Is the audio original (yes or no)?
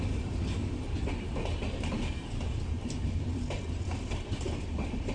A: yes